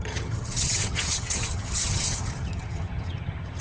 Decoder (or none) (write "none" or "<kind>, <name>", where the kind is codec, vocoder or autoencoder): vocoder, HiFi-GAN